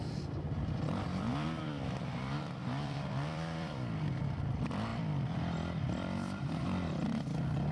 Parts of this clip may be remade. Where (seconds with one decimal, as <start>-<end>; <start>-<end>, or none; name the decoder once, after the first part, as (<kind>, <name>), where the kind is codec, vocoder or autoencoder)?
1.3-4.2 (vocoder, BigVGAN v2); 4.9-6.6